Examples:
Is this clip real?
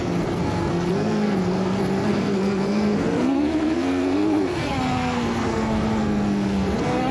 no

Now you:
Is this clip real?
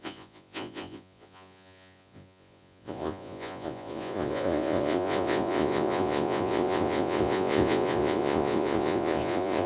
no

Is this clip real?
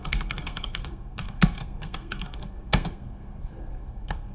no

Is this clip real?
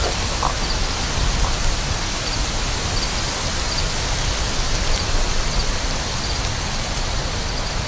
yes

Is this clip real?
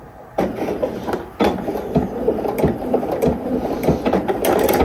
yes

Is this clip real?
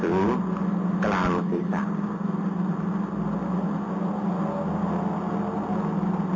yes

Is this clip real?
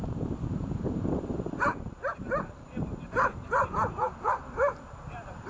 no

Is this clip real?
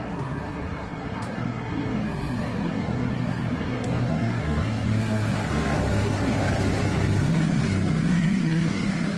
no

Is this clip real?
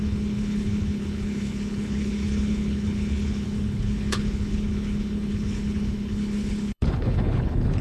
no